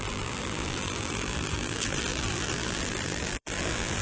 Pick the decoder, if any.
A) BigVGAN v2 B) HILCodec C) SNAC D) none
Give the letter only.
A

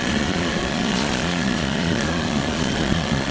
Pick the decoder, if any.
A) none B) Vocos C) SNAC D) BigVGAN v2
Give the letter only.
B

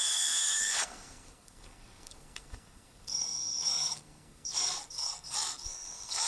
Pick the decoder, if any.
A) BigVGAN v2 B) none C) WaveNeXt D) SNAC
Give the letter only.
D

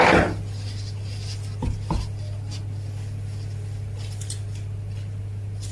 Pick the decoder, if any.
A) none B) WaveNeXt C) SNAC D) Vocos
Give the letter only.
A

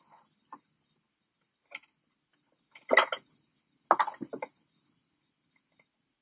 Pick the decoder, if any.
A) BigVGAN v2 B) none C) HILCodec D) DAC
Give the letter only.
B